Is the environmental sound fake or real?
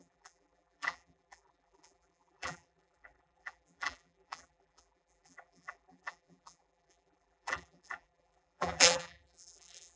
fake